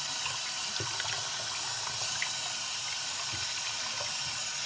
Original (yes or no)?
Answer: yes